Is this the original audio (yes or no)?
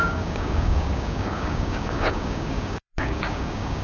no